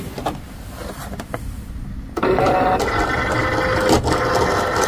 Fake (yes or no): no